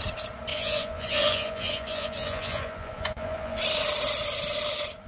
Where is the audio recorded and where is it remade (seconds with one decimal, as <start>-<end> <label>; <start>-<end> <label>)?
0.0-0.5 recorded; 0.5-3.6 remade; 3.6-5.1 recorded